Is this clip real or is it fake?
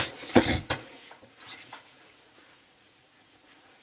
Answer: fake